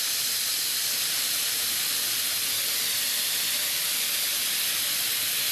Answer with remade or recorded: remade